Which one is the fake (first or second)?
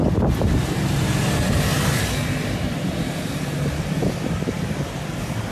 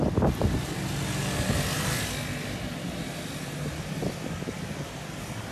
first